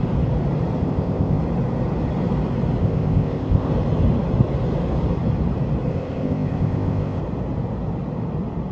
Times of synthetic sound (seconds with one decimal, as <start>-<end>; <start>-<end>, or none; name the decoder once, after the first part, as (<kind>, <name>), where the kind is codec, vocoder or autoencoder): 0.8-1.4 (codec, ZipCodec); 2.8-3.7; 5.9-7.2